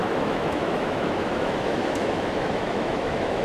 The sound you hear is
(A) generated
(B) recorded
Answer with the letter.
A